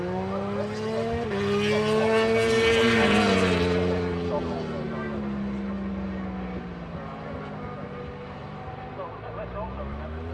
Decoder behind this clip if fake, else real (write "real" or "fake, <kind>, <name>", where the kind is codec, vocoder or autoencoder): real